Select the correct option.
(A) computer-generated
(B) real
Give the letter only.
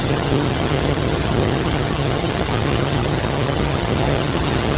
A